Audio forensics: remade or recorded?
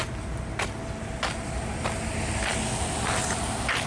recorded